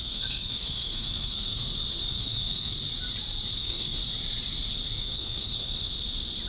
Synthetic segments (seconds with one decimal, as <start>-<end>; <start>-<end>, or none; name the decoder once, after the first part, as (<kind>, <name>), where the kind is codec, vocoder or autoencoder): 0.0-1.6 (codec, SNAC); 2.1-2.7; 3.6-4.0; 5.0-5.9